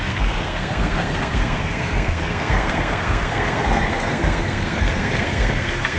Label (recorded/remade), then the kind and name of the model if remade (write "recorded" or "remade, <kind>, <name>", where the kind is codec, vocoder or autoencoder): remade, codec, SNAC